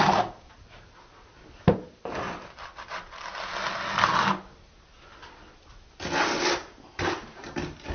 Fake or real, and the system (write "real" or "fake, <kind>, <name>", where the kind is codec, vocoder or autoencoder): real